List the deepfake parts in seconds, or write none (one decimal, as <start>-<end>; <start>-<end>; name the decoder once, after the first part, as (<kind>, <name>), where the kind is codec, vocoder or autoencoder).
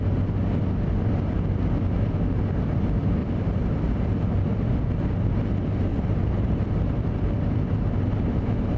3.2-4.9 (vocoder, BigVGAN v2); 5.9-7.2